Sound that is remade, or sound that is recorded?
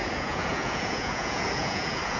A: remade